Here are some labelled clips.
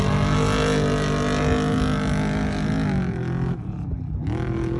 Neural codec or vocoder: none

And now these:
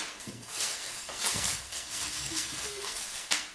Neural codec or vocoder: codec, SNAC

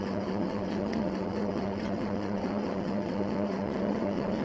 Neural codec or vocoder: vocoder, WaveNeXt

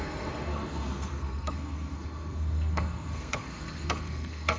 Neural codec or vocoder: codec, SNAC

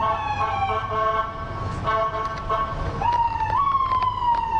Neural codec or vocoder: none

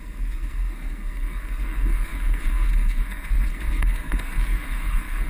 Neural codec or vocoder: codec, SNAC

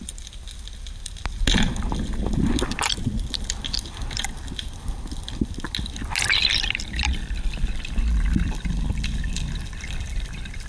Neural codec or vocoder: none